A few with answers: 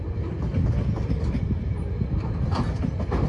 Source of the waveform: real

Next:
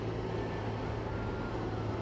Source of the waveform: real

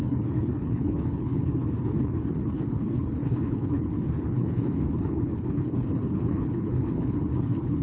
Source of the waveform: fake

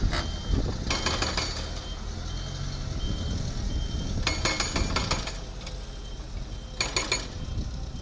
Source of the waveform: real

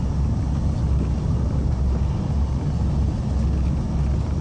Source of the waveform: real